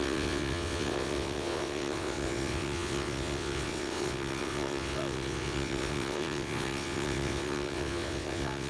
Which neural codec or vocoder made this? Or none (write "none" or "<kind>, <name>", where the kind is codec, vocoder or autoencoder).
vocoder, WaveNeXt